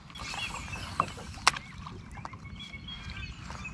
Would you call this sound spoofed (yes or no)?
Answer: no